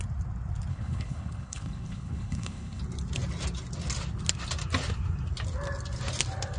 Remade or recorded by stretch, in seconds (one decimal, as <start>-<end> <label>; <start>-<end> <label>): 0.0-0.7 recorded; 0.7-2.8 remade; 2.8-6.6 recorded